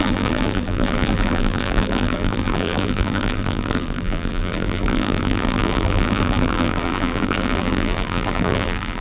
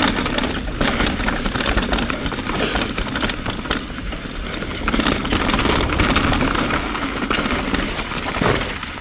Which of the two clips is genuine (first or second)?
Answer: second